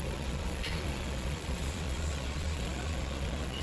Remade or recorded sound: remade